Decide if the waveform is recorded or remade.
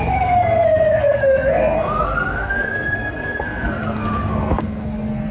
remade